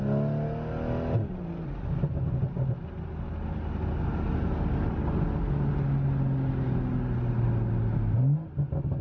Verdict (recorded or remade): recorded